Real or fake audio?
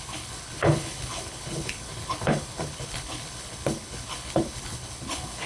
fake